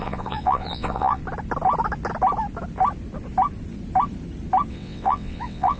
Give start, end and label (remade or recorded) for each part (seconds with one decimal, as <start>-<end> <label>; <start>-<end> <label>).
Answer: 0.0-1.2 remade; 1.2-4.7 recorded; 4.7-5.8 remade